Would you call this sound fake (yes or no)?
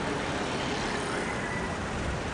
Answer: no